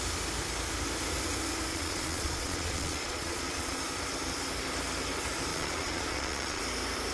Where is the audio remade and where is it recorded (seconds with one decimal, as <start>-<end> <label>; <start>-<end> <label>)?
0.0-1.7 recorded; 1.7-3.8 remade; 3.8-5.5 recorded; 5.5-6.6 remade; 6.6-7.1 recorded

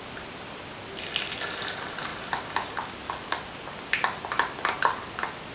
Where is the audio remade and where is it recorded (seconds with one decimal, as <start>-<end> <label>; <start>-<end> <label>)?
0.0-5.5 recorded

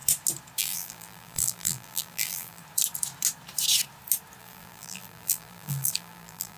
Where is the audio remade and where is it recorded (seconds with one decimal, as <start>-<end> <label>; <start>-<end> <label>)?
0.0-0.6 recorded; 0.6-2.6 remade; 2.6-4.4 recorded; 4.4-6.6 remade

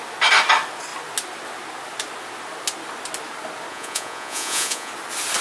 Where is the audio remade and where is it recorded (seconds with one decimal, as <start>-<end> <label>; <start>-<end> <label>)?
0.0-3.7 recorded; 3.7-4.9 remade; 4.9-5.4 recorded

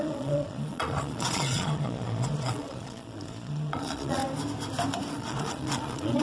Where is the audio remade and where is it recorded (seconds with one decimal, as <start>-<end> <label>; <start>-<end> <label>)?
0.0-4.2 remade; 4.2-5.1 recorded; 5.1-6.2 remade